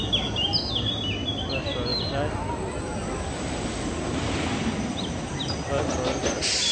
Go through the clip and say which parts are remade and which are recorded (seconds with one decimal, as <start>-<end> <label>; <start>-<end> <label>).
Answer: 0.0-6.7 recorded